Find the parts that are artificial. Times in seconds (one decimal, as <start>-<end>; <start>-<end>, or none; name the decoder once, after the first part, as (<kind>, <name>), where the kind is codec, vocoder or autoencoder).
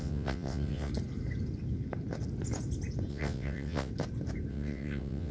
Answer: 0.0-0.9 (vocoder, WaveNeXt); 3.1-3.9; 4.5-5.3